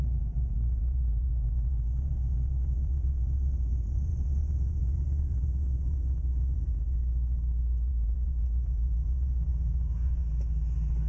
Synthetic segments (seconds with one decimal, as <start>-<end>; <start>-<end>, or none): 0.0-7.0; 7.9-10.2